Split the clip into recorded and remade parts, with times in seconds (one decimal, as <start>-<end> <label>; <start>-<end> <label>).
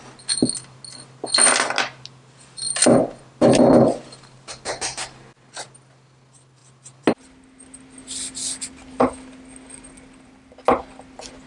0.0-11.5 recorded